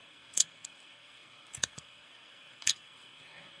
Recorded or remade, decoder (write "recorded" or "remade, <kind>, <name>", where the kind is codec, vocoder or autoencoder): remade, codec, SNAC